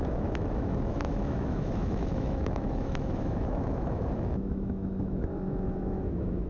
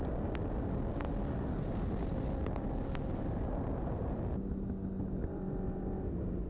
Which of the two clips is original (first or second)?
second